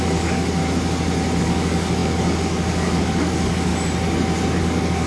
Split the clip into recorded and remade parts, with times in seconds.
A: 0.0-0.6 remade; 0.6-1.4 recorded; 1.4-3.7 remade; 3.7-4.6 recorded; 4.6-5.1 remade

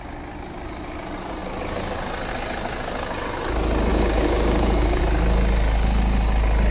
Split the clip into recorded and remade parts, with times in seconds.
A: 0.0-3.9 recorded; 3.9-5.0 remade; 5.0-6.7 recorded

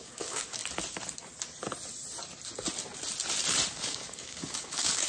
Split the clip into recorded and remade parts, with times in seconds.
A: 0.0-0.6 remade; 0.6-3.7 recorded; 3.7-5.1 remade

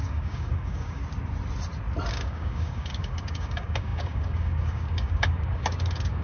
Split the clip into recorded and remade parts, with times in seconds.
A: 0.0-1.0 remade; 1.0-2.1 recorded; 2.1-6.2 remade

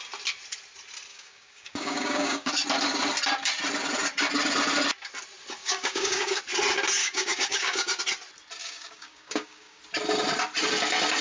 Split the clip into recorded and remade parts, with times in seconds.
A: 0.0-1.1 recorded; 1.1-2.5 remade; 2.5-5.6 recorded; 5.6-6.4 remade; 6.4-7.0 recorded; 7.0-8.0 remade; 8.0-8.6 recorded; 8.6-9.8 remade; 9.8-11.2 recorded